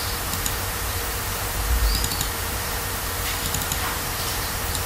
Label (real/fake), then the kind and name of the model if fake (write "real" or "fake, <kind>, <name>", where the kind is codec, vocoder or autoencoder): fake, vocoder, BigVGAN v2